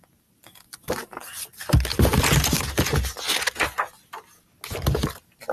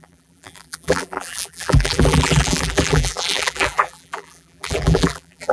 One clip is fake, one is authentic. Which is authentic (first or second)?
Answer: first